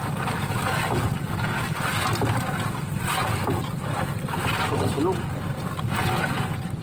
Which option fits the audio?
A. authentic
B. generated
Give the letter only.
A